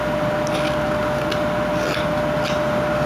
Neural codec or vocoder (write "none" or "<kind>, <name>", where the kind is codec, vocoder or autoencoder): none